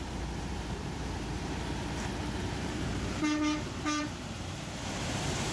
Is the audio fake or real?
fake